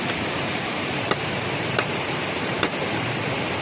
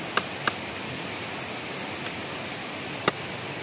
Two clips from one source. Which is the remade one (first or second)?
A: first